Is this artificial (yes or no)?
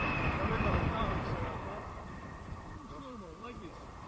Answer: yes